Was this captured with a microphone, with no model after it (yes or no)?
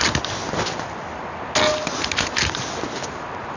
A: yes